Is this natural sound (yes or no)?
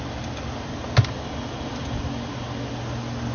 yes